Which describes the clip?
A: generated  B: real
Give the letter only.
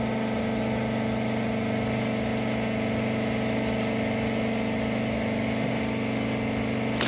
B